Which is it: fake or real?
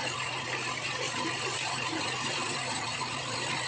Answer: real